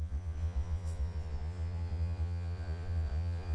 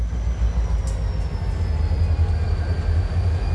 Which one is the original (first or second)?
second